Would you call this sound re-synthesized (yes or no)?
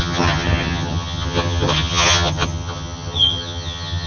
yes